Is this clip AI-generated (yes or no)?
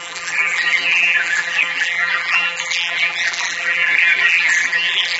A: yes